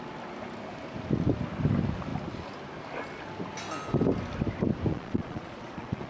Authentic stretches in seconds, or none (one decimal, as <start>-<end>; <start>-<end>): 0.0-4.9